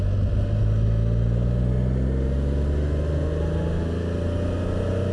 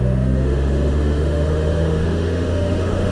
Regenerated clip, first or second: second